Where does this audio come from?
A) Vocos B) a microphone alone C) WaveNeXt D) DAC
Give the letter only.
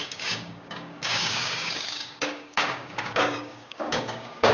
D